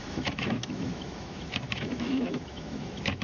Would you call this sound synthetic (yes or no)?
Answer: yes